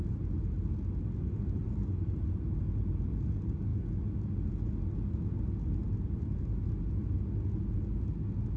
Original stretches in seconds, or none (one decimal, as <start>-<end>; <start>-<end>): 0.0-8.6